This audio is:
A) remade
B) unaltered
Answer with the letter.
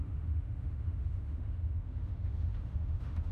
A